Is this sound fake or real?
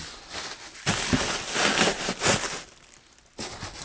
real